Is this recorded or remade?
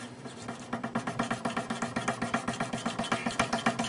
recorded